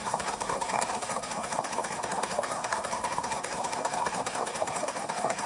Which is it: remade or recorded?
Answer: remade